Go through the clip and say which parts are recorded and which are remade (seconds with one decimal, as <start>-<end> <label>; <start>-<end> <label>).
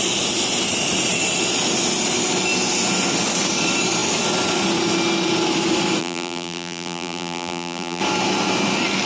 0.0-6.0 recorded; 6.0-8.0 remade; 8.0-9.1 recorded